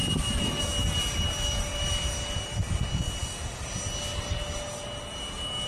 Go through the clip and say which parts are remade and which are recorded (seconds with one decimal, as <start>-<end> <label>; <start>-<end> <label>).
0.0-5.7 recorded